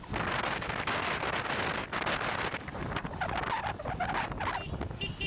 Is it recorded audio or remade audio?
recorded